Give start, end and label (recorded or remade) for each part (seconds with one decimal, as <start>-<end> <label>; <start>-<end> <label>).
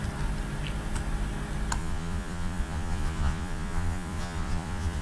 0.0-1.8 recorded; 1.8-5.0 remade